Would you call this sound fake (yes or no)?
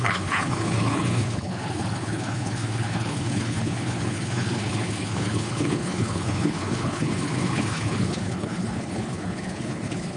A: yes